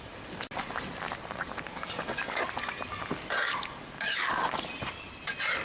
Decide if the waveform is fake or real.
real